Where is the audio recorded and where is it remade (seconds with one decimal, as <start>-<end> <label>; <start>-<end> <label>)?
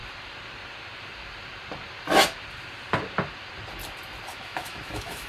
0.0-4.3 recorded; 4.3-5.3 remade